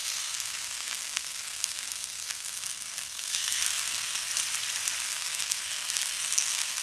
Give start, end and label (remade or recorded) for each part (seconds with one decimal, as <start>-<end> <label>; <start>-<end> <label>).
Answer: 0.0-4.3 remade; 4.3-5.0 recorded; 5.0-6.8 remade